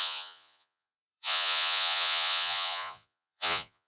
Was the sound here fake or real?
fake